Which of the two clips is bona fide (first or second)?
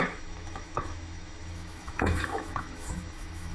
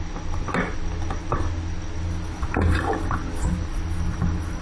second